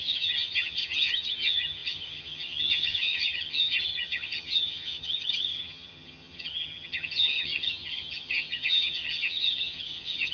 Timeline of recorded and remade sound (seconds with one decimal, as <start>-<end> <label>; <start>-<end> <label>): 0.0-10.3 remade